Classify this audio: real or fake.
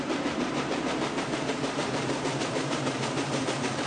fake